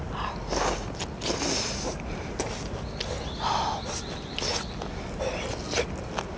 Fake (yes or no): no